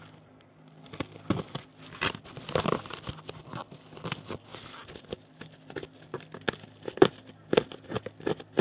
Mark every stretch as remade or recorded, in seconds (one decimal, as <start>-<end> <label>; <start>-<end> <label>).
0.0-8.6 recorded